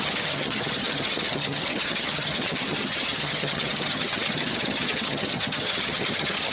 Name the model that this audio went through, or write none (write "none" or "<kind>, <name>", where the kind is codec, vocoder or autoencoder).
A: vocoder, HiFi-GAN